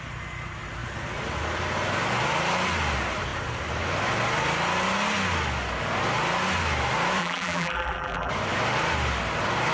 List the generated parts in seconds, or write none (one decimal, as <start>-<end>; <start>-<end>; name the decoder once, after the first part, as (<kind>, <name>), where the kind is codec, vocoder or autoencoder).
7.2-8.3 (vocoder, BigVGAN v2)